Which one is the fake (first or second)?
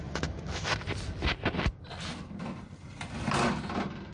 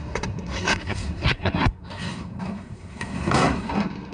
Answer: second